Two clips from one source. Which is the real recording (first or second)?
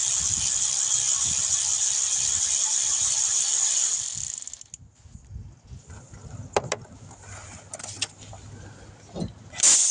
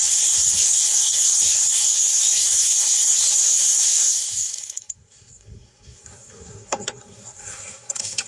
first